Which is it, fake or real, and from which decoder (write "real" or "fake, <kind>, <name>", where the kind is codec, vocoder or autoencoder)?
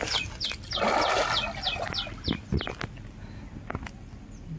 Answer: real